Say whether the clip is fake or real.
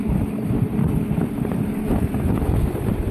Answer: real